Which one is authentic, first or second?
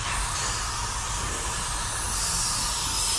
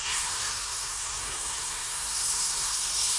first